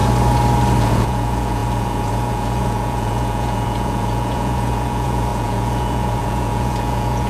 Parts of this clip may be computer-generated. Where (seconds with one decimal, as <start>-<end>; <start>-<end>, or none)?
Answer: 0.8-7.3